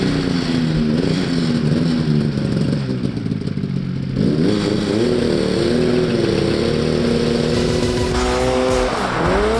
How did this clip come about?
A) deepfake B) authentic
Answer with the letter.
B